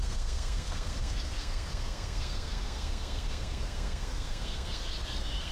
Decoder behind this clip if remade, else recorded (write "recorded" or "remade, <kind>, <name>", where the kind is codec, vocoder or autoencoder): remade, codec, SNAC